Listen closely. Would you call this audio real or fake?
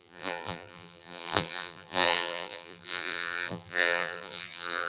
fake